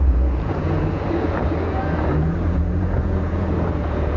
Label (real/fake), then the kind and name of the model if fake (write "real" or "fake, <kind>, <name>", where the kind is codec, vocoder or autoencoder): fake, vocoder, Vocos